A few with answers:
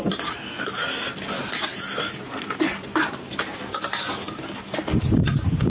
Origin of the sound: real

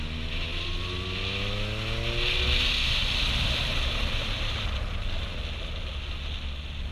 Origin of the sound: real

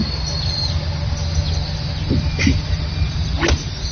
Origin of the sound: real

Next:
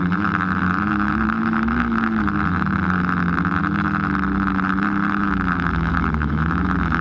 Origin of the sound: fake